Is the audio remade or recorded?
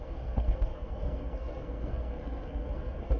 remade